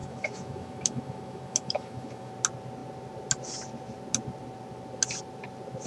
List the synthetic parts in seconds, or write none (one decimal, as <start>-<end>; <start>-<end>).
0.0-2.3